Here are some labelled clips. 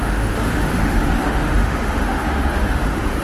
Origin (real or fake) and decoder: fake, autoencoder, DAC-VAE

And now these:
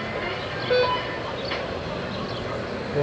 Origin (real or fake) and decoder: real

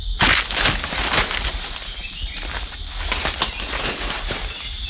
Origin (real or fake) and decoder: real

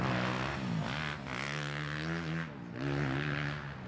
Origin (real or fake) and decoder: real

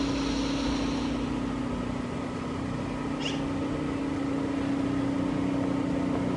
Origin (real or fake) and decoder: real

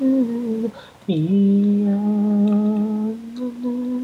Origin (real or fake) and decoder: real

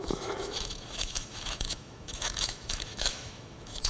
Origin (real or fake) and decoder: fake, autoencoder, DAC-VAE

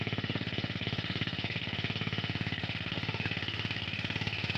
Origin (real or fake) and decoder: fake, autoencoder, DAC-VAE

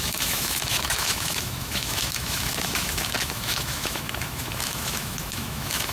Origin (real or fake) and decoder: fake, autoencoder, DAC-VAE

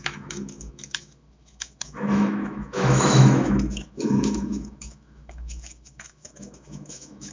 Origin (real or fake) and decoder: fake, autoencoder, DAC-VAE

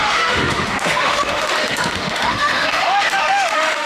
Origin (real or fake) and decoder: fake, autoencoder, DAC-VAE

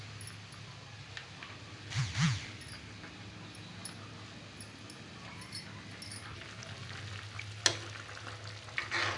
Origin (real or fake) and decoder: real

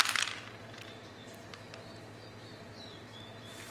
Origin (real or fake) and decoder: real